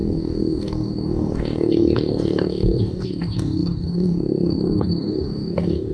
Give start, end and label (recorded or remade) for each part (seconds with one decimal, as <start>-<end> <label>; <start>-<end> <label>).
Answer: 0.0-5.9 remade